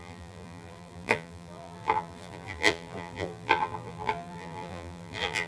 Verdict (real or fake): fake